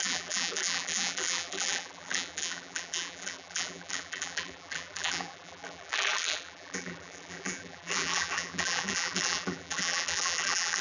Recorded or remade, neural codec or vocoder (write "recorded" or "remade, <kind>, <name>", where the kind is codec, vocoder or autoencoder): remade, vocoder, BigVGAN v2